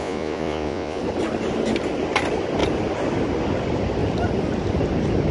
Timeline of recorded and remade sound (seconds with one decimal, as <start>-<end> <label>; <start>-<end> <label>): 0.0-1.0 remade; 1.0-5.3 recorded